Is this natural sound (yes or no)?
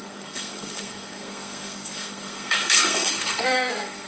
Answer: no